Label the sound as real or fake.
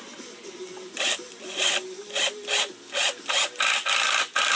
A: real